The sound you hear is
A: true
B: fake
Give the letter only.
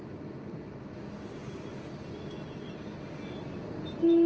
A